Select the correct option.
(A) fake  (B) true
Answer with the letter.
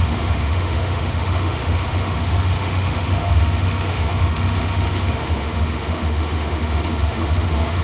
A